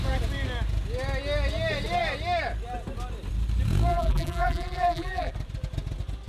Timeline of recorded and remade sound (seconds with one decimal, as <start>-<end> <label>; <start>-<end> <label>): 0.0-3.9 recorded; 3.9-5.3 remade; 5.3-6.3 recorded